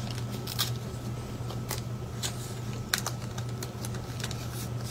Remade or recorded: recorded